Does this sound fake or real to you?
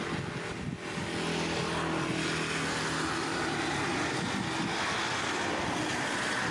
real